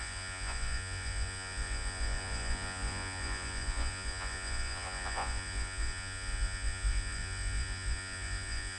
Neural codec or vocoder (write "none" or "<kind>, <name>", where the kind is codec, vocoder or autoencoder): vocoder, Vocos